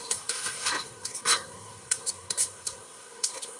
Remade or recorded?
remade